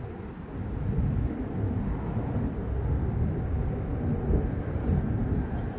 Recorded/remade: recorded